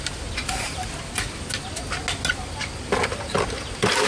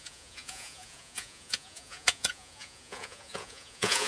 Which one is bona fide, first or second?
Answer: first